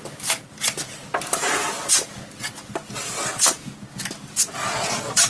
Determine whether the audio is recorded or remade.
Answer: recorded